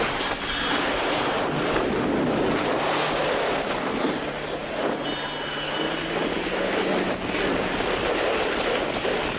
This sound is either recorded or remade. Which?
recorded